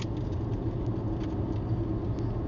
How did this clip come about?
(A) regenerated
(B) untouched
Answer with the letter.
B